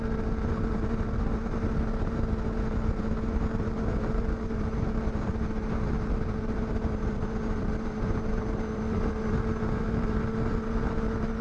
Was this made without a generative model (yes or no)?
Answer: no